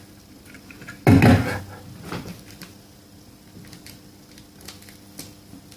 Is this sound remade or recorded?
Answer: recorded